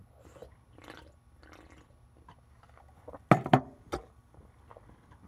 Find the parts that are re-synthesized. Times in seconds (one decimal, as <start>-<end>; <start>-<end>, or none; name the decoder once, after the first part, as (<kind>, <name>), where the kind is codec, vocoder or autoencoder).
none